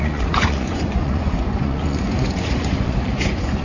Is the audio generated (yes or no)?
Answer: yes